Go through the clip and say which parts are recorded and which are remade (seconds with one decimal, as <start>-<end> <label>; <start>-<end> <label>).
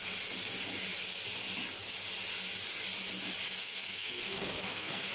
0.0-3.6 recorded; 3.6-5.1 remade